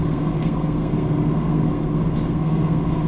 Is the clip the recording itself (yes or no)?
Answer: no